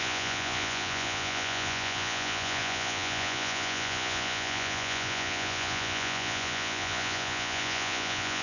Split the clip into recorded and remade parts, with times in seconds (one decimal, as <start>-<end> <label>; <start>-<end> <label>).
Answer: 0.0-8.4 remade